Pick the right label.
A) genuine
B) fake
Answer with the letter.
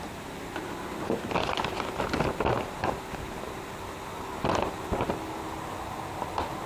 A